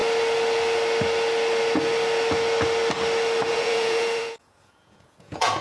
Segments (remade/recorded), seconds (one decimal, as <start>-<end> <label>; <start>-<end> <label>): 0.0-3.4 recorded; 3.4-5.6 remade